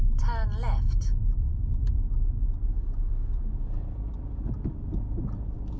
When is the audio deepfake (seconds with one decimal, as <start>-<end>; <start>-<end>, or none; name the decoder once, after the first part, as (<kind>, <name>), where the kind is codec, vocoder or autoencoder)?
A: none